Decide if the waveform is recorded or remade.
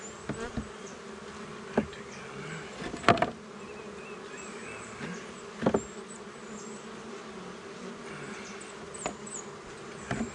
recorded